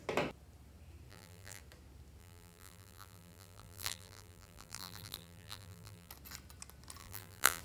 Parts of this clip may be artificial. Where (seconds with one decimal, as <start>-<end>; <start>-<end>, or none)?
1.1-1.6; 2.2-6.1; 7.0-7.6